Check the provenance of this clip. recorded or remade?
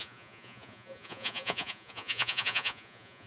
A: remade